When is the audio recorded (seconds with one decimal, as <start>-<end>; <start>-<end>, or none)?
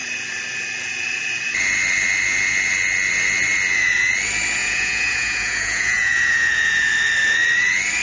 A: 0.0-4.6; 6.9-8.0